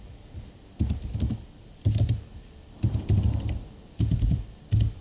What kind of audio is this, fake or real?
real